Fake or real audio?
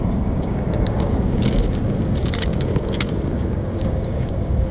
fake